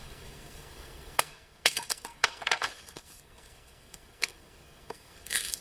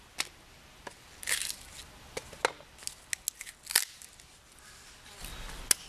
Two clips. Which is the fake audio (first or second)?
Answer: first